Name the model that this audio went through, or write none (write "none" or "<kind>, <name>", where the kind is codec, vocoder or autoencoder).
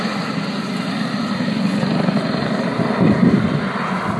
none